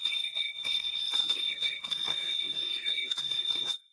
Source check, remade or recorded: remade